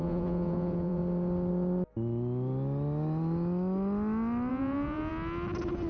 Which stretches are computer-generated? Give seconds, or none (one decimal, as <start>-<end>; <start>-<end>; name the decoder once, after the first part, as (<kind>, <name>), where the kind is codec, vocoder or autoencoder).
0.0-1.0 (vocoder, Vocos); 4.5-5.1